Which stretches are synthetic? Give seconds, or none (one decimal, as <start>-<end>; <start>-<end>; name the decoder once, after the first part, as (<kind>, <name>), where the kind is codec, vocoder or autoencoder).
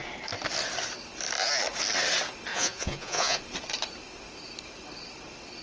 2.5-3.4 (vocoder, Vocos)